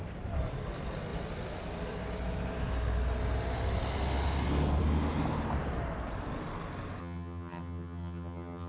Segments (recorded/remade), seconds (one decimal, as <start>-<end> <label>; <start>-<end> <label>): 0.0-7.0 recorded; 7.0-8.7 remade